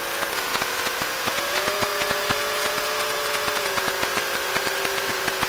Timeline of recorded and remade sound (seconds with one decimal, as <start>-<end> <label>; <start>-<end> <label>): 0.0-4.1 remade; 4.1-5.1 recorded; 5.1-5.5 remade